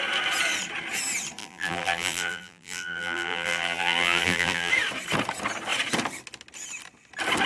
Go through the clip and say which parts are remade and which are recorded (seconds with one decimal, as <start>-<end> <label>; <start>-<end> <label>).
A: 0.0-1.4 recorded; 1.4-4.7 remade; 4.7-7.5 recorded